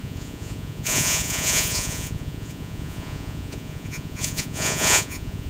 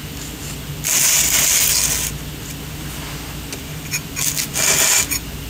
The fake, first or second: first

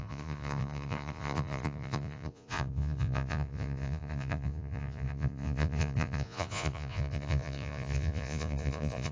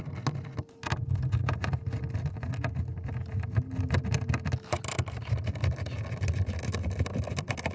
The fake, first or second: first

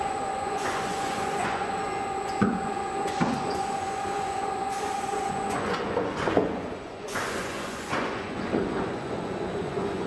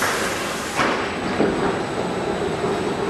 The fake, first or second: first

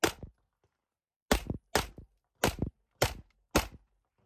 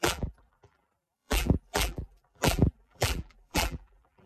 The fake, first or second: second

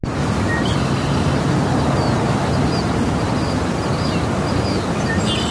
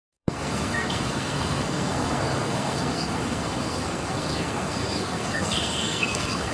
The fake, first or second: second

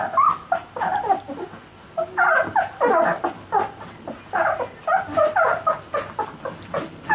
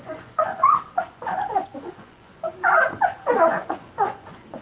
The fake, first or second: second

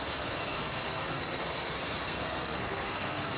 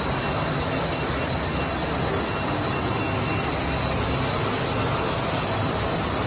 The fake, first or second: first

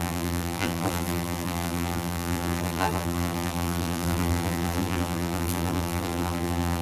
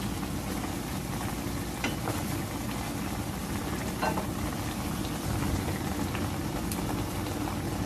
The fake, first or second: first